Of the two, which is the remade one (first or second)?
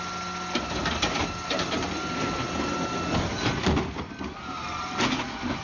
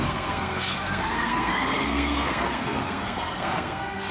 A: second